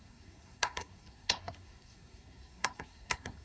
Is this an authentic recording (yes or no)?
no